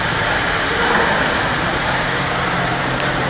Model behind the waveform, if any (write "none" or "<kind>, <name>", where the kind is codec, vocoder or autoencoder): vocoder, BigVGAN v2